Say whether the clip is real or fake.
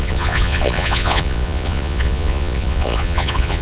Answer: fake